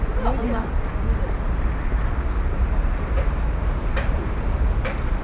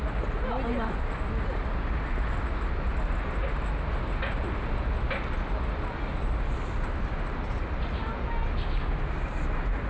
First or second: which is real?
second